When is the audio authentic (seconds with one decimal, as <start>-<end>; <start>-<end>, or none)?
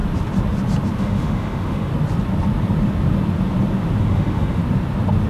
0.0-1.0; 1.9-4.0; 4.6-5.3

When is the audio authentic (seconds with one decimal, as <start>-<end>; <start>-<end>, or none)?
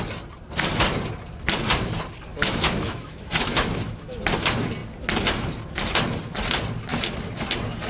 0.0-2.3; 4.2-7.9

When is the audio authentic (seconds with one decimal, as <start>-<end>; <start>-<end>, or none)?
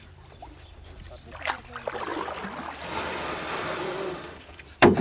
2.1-2.8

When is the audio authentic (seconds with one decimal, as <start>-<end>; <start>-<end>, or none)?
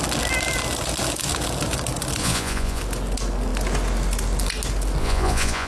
0.0-2.2; 2.8-5.0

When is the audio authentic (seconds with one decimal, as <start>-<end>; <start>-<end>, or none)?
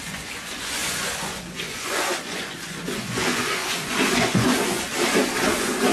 4.9-5.5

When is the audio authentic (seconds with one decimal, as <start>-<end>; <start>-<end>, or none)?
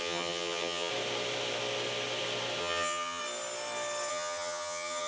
0.9-2.6; 3.2-4.1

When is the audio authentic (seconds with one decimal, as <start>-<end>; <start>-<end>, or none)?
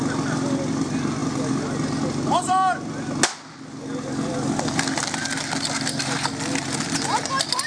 0.0-7.7